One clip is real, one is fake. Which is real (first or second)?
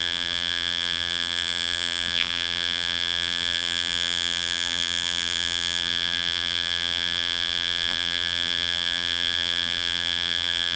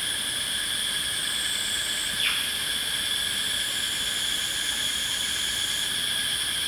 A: second